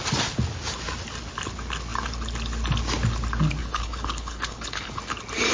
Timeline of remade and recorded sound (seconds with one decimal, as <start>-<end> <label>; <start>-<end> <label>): 0.0-3.6 recorded; 3.6-5.0 remade; 5.0-5.5 recorded